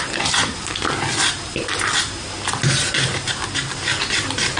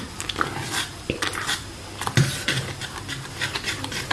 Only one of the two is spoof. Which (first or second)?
second